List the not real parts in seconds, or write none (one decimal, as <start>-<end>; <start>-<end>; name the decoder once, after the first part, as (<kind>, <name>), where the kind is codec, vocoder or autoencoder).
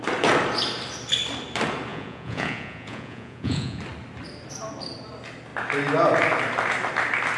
1.9-3.8 (vocoder, Vocos)